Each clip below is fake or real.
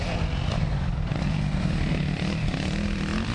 real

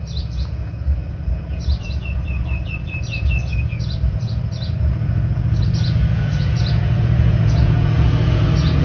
fake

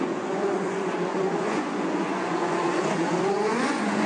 fake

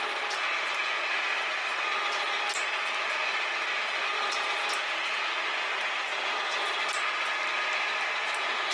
real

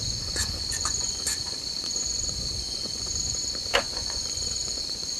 fake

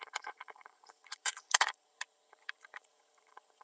fake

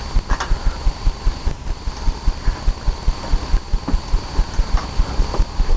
real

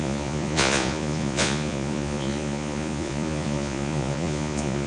fake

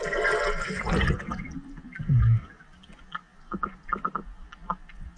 real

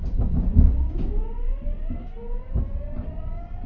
real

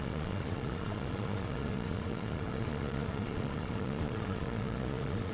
fake